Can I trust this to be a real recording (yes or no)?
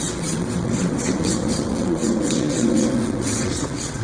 no